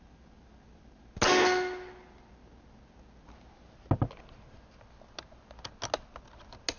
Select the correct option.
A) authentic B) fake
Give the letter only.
A